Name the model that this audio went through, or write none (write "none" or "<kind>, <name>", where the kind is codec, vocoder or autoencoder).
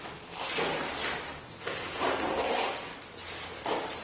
none